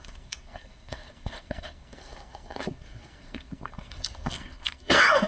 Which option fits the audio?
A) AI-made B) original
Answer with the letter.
A